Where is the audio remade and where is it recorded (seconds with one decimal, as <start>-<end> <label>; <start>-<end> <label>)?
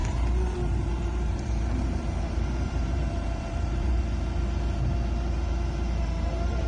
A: 0.0-4.0 remade; 4.0-6.7 recorded